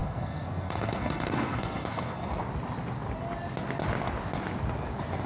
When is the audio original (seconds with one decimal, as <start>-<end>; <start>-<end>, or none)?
2.3-5.3